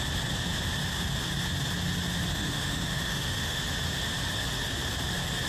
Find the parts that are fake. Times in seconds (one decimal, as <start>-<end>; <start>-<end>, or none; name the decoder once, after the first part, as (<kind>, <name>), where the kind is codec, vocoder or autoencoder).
2.3-3.6 (autoencoder, DAC-VAE)